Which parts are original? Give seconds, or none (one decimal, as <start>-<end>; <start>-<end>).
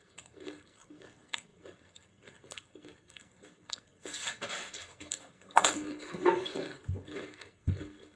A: none